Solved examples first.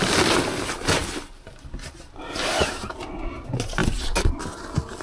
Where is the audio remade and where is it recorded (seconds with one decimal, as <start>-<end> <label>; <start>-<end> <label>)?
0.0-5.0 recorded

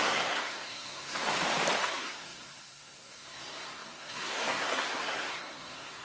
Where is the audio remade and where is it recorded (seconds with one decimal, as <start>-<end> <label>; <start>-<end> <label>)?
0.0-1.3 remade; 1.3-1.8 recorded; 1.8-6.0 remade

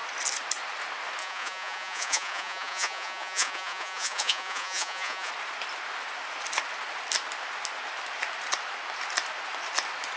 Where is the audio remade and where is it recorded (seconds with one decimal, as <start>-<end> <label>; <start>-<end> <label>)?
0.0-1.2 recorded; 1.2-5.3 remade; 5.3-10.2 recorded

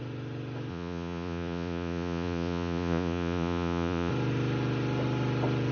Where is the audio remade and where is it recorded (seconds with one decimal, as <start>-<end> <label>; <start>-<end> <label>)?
0.0-0.7 recorded; 0.7-4.1 remade; 4.1-5.7 recorded

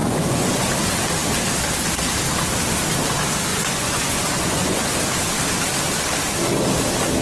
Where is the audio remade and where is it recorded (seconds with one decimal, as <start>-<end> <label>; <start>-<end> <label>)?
0.0-0.7 remade; 0.7-3.5 recorded; 3.5-4.9 remade; 4.9-7.2 recorded

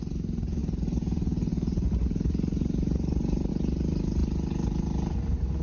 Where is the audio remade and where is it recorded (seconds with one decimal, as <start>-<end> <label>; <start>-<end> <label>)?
0.0-5.6 recorded